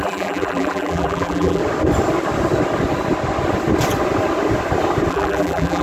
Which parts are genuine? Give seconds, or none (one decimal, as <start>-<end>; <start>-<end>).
1.6-5.1